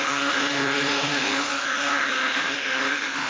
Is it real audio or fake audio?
fake